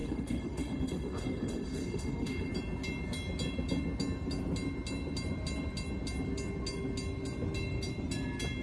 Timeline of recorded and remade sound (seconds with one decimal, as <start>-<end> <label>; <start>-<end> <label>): 0.0-2.5 remade; 2.5-8.6 recorded